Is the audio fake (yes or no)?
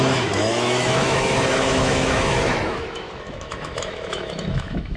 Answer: yes